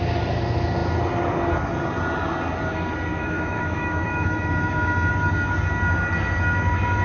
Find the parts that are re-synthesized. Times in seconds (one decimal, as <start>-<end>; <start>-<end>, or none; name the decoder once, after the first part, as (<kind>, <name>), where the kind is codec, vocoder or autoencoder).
3.1-5.1 (autoencoder, DAC-VAE)